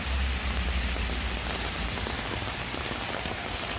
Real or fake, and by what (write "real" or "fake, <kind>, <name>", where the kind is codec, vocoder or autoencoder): real